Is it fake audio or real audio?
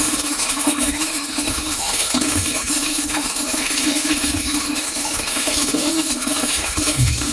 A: fake